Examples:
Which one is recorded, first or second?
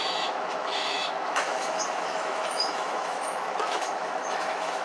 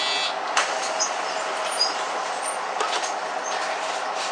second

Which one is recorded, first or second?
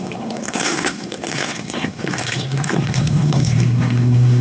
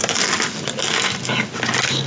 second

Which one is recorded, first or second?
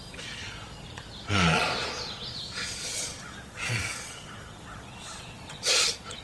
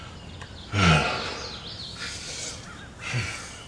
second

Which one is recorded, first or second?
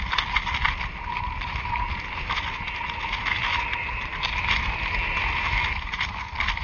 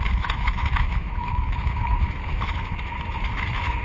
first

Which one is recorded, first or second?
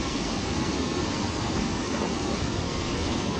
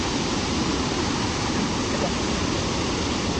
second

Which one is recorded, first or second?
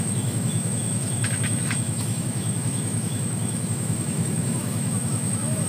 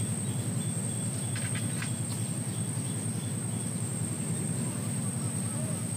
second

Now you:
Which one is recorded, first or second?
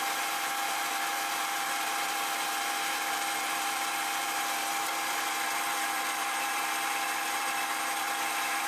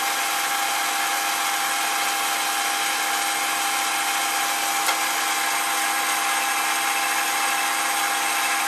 second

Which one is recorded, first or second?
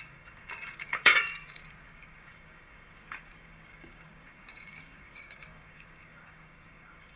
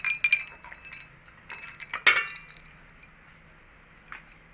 second